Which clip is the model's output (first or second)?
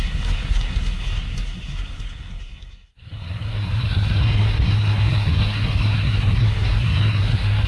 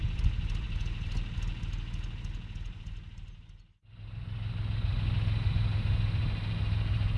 first